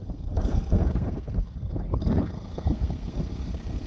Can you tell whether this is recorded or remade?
remade